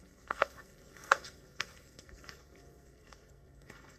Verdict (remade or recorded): remade